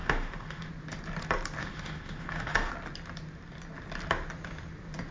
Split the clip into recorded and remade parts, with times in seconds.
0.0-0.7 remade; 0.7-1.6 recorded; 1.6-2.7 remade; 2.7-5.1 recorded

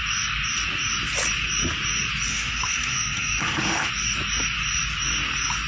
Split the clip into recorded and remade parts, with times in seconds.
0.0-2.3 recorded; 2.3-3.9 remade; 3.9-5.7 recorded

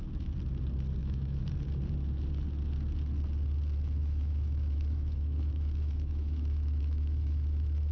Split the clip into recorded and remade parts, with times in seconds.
0.0-1.0 recorded; 1.0-1.5 remade; 1.5-4.0 recorded; 4.0-7.9 remade